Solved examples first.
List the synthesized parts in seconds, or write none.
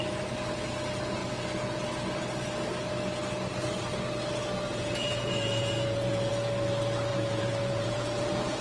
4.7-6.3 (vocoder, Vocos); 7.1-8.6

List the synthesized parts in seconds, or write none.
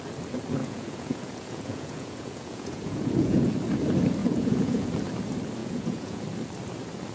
0.6-3.5 (vocoder, Vocos); 4.2-4.9; 5.6-6.2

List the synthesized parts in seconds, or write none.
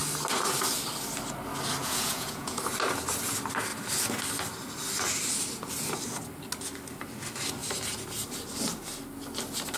1.8-2.6 (vocoder, Vocos)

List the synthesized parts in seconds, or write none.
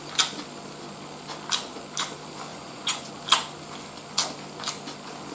2.5-3.1 (vocoder, Vocos)